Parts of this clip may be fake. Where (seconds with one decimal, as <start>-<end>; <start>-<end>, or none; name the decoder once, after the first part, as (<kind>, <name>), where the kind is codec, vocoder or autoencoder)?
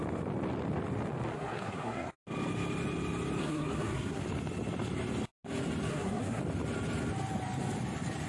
1.3-2.1 (codec, SNAC); 3.4-4.2; 5.9-6.4